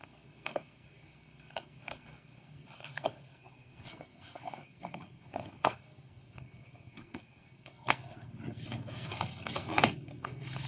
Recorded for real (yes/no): no